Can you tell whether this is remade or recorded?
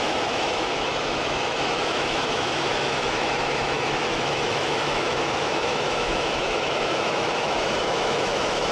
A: remade